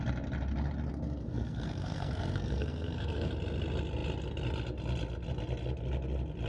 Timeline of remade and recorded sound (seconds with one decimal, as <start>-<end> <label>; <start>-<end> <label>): 0.0-0.9 recorded; 0.9-3.3 remade; 3.3-6.5 recorded